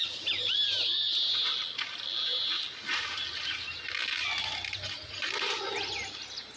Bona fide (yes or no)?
yes